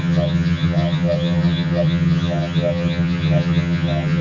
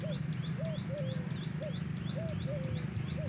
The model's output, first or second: first